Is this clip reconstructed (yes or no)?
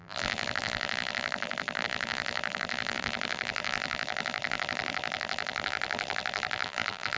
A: yes